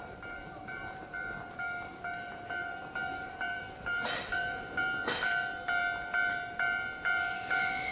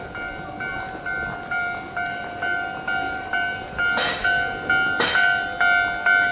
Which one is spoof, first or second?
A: first